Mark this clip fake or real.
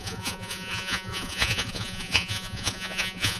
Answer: fake